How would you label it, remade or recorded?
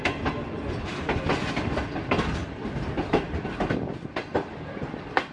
recorded